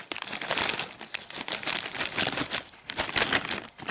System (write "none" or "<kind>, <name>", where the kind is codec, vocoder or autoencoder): none